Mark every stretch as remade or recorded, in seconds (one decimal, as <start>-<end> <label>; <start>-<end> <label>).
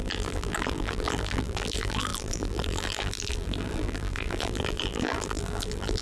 0.0-6.0 remade